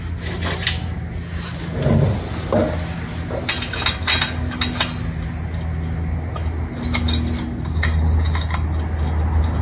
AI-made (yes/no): no